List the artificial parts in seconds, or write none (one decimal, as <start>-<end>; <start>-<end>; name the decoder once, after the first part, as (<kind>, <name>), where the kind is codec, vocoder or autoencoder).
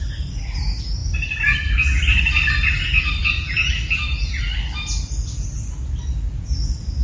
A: none